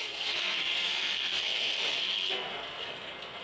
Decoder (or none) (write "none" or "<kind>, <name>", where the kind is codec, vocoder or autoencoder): codec, SNAC